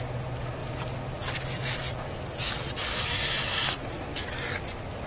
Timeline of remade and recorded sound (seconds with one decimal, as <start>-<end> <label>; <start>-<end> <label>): 0.0-5.1 recorded